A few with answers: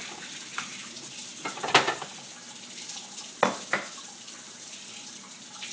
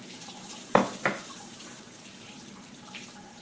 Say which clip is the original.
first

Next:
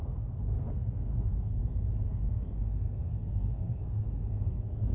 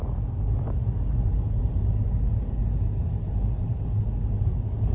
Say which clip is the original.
second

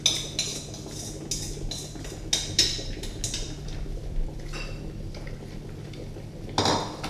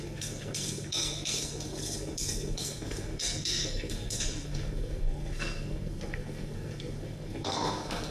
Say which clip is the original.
first